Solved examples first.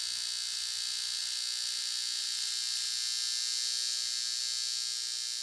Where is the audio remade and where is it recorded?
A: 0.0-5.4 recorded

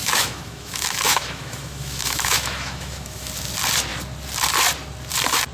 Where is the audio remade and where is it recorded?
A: 0.0-3.3 remade; 3.3-5.5 recorded